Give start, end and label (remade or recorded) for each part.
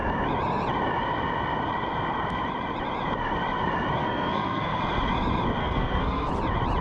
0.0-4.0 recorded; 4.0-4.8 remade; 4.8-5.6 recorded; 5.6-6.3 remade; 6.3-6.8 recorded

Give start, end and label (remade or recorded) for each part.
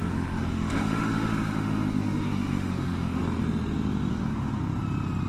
0.0-3.2 remade; 3.2-4.1 recorded; 4.1-4.6 remade; 4.6-5.3 recorded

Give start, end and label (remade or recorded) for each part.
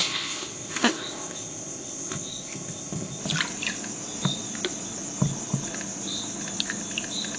0.0-3.2 remade; 3.2-7.4 recorded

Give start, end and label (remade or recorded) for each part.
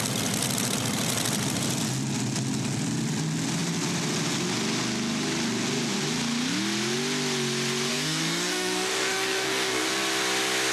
0.0-7.9 recorded; 7.9-9.9 remade; 9.9-10.7 recorded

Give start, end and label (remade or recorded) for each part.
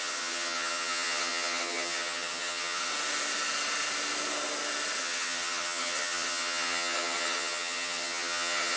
0.0-2.9 remade; 2.9-5.0 recorded; 5.0-8.8 remade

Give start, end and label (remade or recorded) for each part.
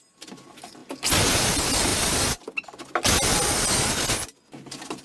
0.0-5.0 recorded